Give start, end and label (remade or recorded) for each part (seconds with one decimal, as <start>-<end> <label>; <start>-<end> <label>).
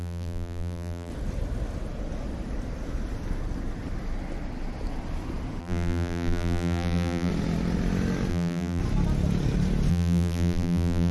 0.0-1.1 remade; 1.1-5.6 recorded; 5.6-7.3 remade; 7.3-8.3 recorded; 8.3-8.8 remade; 8.8-9.9 recorded; 9.9-11.1 remade